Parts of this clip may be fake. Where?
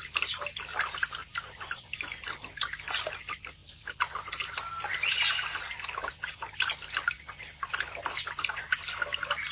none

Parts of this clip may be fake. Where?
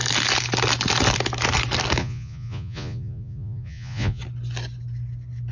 2.0-4.2 (vocoder, Vocos)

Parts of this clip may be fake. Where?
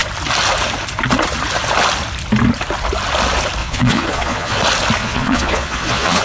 3.6-4.6 (vocoder, Vocos); 5.0-6.2